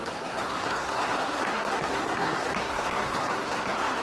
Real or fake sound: fake